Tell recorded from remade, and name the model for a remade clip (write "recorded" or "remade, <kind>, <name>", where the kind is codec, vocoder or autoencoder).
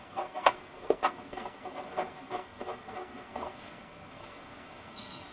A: remade, codec, SNAC